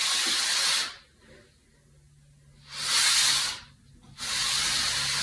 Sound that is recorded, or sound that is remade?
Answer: recorded